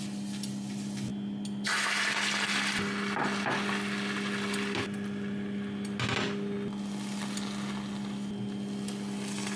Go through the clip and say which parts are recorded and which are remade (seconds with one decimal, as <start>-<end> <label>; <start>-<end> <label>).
0.0-9.6 recorded